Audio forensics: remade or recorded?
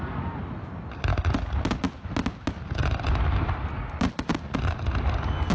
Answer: recorded